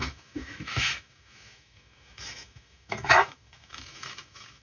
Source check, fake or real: fake